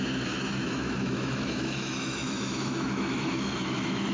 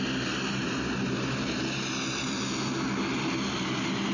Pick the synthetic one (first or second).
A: first